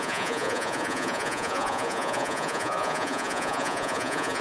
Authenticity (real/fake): fake